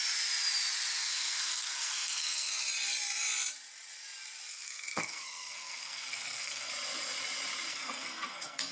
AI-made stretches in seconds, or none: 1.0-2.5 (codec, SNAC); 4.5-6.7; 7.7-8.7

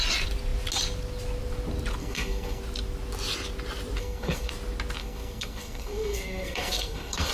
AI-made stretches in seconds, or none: 2.0-2.6 (codec, SNAC); 4.0-4.5; 5.0-7.3

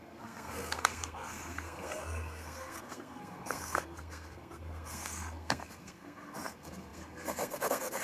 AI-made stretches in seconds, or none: 0.0-8.0 (codec, SNAC)

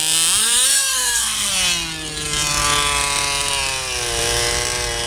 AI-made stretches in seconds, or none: 0.4-1.5 (codec, SNAC)

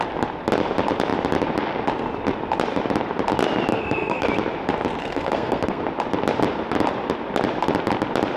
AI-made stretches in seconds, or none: 3.7-4.3 (codec, SNAC); 5.0-5.8

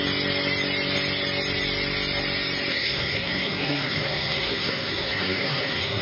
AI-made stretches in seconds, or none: 2.7-6.0 (codec, SNAC)

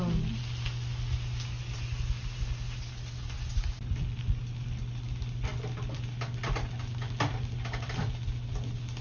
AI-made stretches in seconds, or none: none